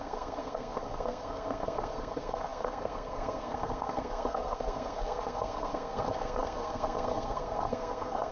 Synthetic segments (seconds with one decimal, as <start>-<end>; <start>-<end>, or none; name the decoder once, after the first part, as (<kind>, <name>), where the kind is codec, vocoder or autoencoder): 0.0-8.3 (codec, SNAC)